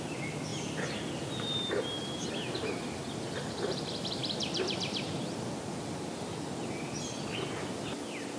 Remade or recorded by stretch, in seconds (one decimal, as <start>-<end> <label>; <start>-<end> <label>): 0.0-8.4 recorded